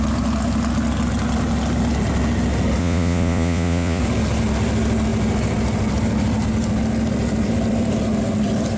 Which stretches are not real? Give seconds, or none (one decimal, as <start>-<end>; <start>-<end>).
2.8-4.0